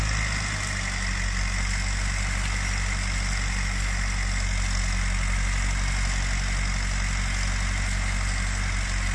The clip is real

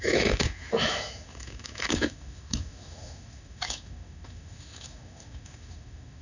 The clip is fake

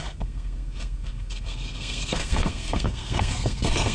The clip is fake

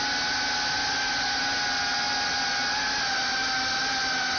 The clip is real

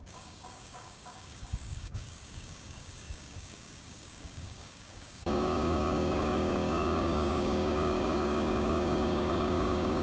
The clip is fake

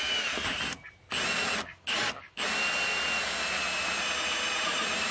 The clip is real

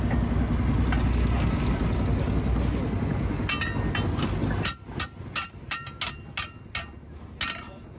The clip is real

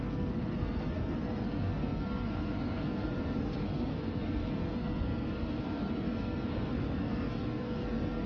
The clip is fake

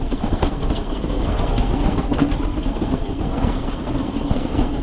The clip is fake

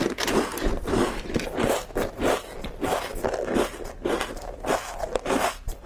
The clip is real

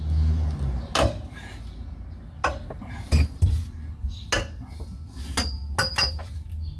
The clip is real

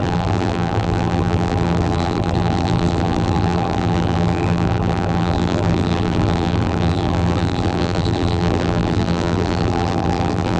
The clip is fake